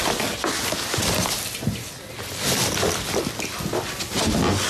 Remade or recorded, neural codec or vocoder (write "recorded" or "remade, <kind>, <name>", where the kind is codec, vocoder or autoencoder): recorded